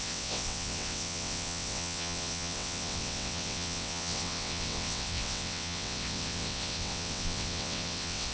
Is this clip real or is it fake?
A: fake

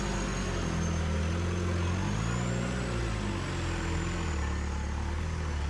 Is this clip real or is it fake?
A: real